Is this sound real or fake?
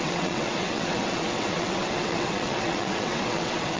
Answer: fake